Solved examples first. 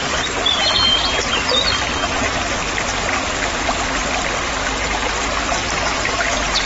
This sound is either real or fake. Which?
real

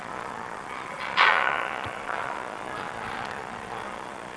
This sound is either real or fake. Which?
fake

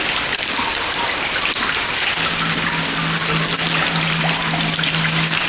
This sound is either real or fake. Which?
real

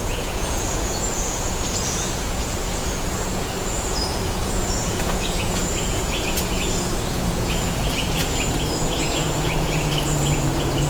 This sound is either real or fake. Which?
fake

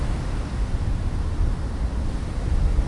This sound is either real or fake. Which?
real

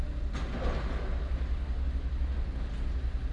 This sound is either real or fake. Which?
real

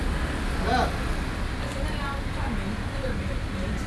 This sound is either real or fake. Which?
real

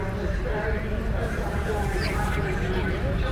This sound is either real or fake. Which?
real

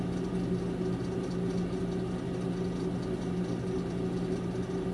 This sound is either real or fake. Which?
real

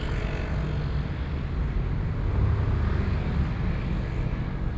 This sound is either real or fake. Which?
real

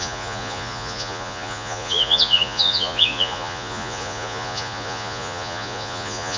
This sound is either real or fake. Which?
fake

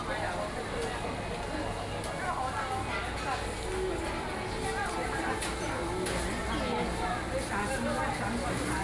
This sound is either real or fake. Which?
real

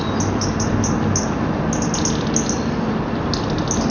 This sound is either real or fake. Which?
real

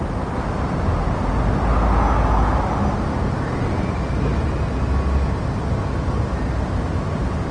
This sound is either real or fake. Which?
real